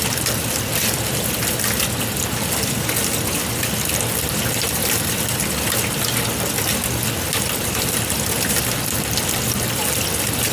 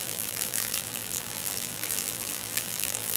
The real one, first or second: first